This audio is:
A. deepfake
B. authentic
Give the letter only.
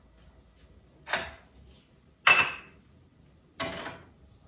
B